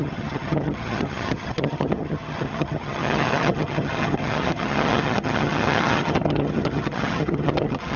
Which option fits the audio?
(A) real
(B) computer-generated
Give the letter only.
B